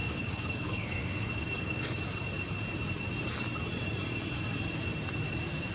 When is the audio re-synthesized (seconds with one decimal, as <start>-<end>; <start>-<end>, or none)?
0.0-2.0